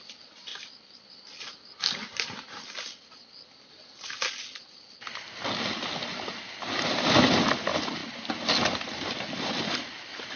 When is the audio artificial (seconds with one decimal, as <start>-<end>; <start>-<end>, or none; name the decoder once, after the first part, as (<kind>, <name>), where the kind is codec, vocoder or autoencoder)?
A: none